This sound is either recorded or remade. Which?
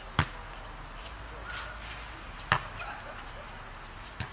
recorded